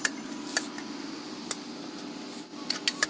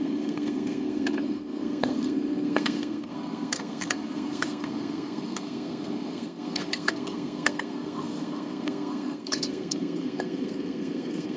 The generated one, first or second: second